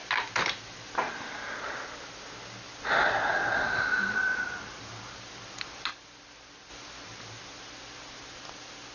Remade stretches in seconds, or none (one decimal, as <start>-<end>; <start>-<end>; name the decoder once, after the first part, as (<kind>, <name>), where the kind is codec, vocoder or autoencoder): none

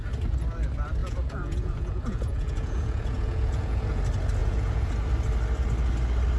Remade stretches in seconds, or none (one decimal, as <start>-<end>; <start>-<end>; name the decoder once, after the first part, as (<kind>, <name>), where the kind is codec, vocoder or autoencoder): 1.0-4.0 (vocoder, Vocos); 4.4-4.9

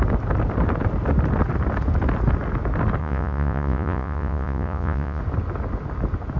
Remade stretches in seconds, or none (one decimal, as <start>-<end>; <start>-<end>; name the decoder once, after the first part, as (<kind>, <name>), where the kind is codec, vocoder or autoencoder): 3.0-5.2 (vocoder, Vocos)